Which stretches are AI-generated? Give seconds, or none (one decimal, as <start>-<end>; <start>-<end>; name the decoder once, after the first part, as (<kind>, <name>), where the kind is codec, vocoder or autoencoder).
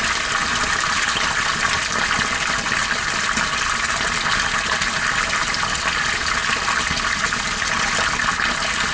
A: none